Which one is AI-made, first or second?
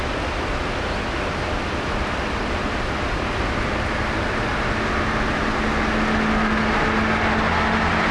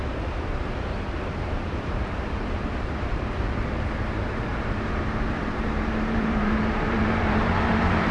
second